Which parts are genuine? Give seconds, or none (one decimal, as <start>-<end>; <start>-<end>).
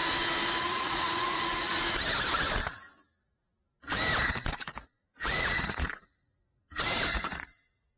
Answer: 0.0-0.6; 1.7-4.5; 6.6-7.2